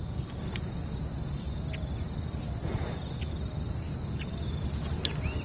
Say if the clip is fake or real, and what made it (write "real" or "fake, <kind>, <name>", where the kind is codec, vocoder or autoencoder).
real